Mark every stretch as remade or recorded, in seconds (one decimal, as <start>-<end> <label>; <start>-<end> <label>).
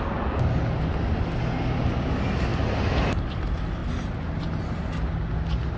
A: 0.0-5.8 recorded